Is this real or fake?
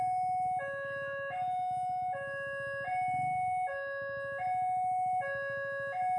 real